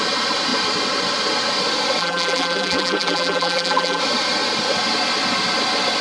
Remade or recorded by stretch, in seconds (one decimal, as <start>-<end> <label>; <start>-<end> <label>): 0.0-2.0 recorded; 2.0-4.0 remade; 4.0-6.0 recorded

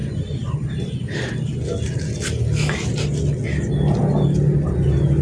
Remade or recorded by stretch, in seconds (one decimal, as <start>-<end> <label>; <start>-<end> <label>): 0.0-5.2 recorded

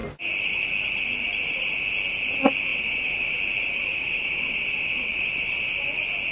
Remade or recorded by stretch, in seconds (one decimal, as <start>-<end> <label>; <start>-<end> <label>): 0.0-2.7 recorded; 2.7-3.4 remade; 3.4-3.9 recorded; 3.9-5.7 remade; 5.7-6.3 recorded

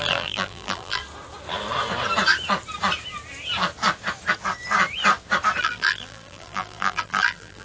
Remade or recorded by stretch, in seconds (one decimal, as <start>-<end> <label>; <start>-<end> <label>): 0.0-1.0 remade; 1.0-5.6 recorded; 5.6-7.6 remade

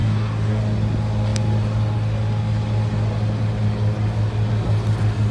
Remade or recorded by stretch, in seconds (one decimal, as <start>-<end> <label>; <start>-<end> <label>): 0.0-0.6 remade; 0.6-5.3 recorded

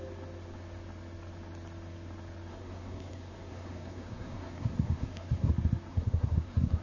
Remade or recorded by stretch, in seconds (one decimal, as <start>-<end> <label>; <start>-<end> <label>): 0.0-2.5 recorded; 2.5-5.5 remade; 5.5-5.9 recorded; 5.9-6.8 remade

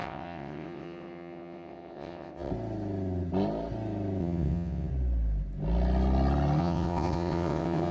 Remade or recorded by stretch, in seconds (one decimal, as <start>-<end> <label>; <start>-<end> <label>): 0.0-2.5 remade; 2.5-4.2 recorded; 4.2-4.9 remade; 4.9-6.6 recorded; 6.6-7.9 remade